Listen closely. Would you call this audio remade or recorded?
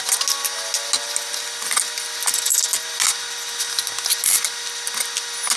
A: recorded